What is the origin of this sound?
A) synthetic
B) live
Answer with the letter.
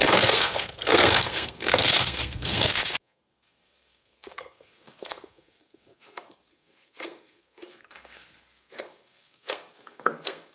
A